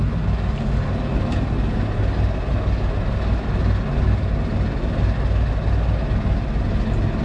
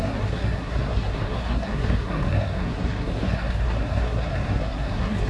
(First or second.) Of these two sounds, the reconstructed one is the second